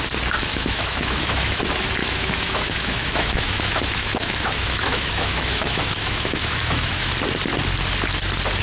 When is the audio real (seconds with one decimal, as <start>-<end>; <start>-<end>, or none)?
0.0-0.5; 1.6-2.0; 7.1-8.6

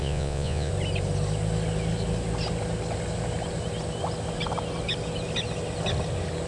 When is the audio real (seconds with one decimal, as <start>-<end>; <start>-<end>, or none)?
0.7-6.5

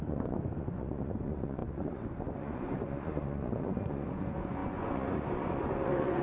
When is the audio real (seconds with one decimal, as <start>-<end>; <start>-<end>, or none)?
none

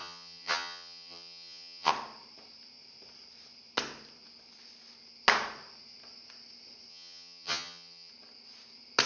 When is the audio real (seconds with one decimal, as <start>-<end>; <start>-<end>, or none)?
1.9-6.9; 8.1-9.1

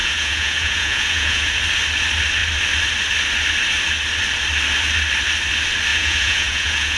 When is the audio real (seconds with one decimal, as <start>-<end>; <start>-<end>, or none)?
1.6-5.9

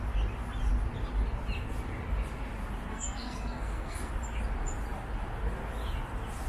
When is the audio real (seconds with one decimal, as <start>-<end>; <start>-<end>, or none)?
0.0-2.9; 4.1-6.5

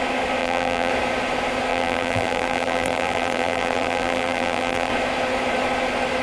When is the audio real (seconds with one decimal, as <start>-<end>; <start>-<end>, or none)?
0.0-0.4; 0.9-1.7; 4.9-6.2

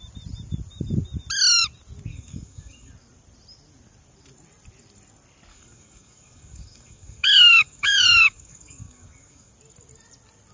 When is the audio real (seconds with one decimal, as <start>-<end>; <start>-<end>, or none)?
0.0-2.1; 2.9-5.5; 9.5-10.5